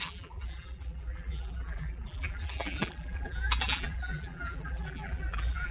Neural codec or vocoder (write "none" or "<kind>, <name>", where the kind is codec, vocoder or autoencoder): vocoder, BigVGAN v2